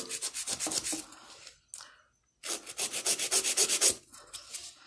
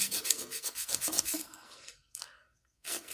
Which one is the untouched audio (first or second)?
first